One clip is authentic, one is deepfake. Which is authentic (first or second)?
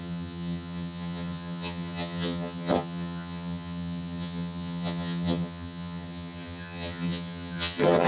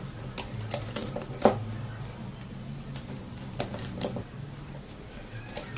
second